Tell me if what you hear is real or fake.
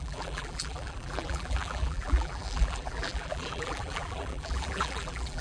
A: fake